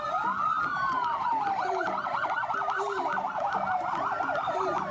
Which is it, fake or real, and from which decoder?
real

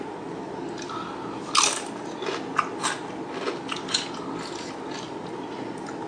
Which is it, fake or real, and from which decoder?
real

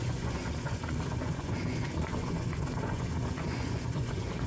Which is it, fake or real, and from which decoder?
fake, vocoder, Vocos